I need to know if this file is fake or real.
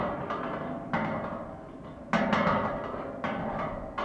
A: real